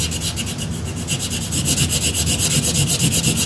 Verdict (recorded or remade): recorded